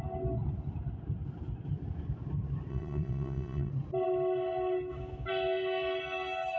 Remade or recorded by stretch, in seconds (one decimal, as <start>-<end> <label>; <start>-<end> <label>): 0.0-2.7 recorded; 2.7-3.7 remade; 3.7-6.6 recorded